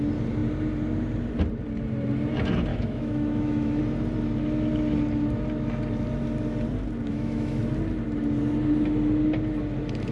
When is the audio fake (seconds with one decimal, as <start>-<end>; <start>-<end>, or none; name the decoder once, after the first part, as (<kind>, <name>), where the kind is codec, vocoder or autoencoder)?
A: 2.7-3.8 (autoencoder, DAC-VAE); 7.0-7.6